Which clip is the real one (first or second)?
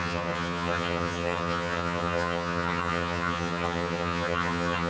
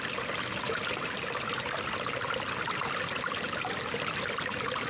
second